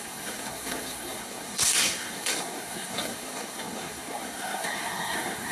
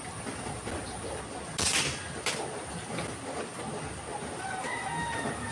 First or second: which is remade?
first